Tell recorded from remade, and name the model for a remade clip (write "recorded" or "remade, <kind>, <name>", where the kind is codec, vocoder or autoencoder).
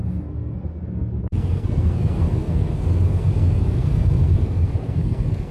remade, codec, SNAC